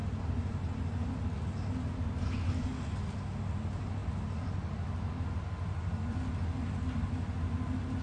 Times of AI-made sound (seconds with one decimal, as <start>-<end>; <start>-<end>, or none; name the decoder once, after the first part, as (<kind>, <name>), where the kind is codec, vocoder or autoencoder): none